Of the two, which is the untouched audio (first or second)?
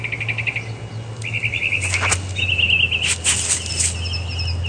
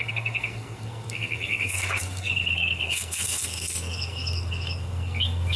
first